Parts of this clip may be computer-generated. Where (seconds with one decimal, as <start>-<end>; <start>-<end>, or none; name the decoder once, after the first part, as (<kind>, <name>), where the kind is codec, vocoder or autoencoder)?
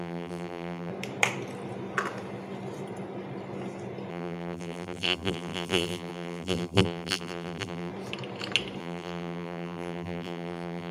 0.0-0.9 (vocoder, BigVGAN v2); 4.1-7.9; 8.8-10.9